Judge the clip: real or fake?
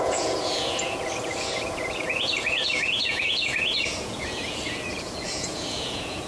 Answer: fake